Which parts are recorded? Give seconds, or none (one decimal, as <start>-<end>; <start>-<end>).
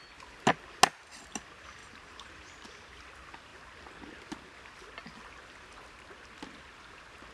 0.0-7.3